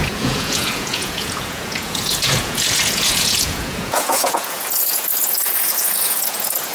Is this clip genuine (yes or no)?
no